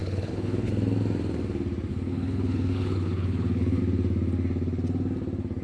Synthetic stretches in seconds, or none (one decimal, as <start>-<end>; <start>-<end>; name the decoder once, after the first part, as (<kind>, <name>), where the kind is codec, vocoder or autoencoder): 0.0-0.7 (codec, HILCodec); 1.9-3.8